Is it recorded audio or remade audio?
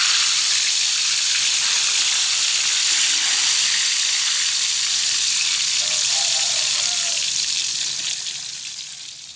remade